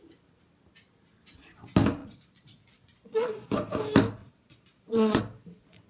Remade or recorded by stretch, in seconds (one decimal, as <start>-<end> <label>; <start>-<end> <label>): 0.0-2.0 recorded; 2.0-3.5 remade; 3.5-4.2 recorded; 4.2-5.2 remade; 5.2-5.9 recorded